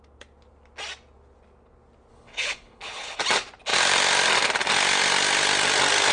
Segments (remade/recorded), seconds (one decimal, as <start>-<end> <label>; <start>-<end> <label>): 0.0-2.1 recorded; 2.1-3.2 remade; 3.2-6.1 recorded